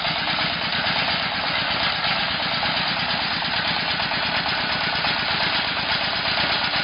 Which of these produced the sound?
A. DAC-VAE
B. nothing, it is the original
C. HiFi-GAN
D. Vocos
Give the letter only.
B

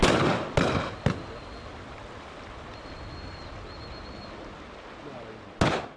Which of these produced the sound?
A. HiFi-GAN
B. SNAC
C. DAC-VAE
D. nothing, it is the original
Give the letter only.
D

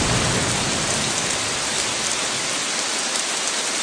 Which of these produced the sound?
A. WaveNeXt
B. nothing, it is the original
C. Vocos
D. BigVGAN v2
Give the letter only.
B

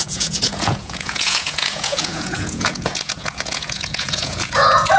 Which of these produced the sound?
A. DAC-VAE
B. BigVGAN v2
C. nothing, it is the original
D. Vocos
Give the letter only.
D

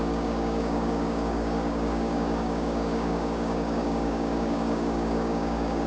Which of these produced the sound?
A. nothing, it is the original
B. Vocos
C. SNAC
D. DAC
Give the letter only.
D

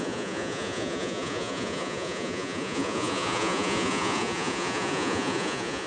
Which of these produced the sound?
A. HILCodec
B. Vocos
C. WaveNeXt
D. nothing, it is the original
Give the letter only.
B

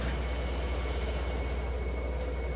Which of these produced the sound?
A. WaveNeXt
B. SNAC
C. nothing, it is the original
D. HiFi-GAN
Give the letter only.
C